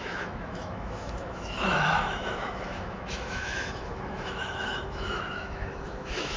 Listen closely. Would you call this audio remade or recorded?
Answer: remade